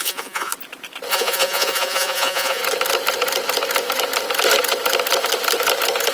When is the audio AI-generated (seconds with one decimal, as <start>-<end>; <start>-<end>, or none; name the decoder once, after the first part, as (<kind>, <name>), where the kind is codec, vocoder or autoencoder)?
0.0-0.5 (vocoder, Vocos); 1.1-2.6